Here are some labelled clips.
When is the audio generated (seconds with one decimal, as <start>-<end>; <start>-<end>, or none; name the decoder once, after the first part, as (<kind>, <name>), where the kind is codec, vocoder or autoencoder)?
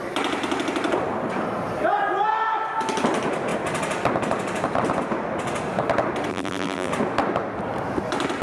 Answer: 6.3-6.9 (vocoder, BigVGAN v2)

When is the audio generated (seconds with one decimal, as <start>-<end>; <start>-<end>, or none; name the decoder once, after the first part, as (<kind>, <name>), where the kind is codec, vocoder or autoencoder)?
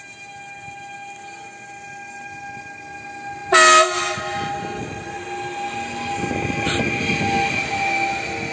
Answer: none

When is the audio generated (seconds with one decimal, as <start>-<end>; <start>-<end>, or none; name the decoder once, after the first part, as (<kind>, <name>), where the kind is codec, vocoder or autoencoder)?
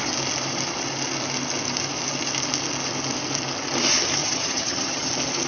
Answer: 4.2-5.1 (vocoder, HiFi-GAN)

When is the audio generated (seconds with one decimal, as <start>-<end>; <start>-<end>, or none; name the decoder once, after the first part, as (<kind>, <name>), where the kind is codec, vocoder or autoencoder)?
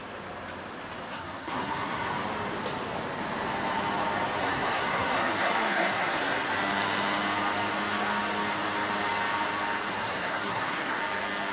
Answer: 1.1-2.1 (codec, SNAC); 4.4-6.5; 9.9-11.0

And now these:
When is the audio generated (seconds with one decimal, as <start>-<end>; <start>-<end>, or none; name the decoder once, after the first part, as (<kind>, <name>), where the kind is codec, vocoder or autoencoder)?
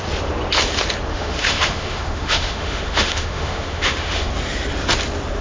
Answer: 1.1-4.3 (autoencoder, DAC-VAE)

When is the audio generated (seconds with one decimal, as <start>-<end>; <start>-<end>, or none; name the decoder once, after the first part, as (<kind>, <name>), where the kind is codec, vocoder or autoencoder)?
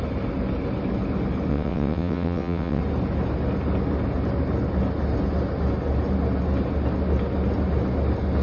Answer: 1.5-2.8 (vocoder, WaveNeXt)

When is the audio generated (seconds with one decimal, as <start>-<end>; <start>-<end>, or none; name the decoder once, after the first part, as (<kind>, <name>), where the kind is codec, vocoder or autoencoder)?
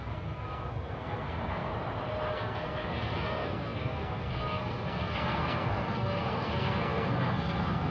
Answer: 0.0-1.7 (codec, SNAC); 2.3-7.9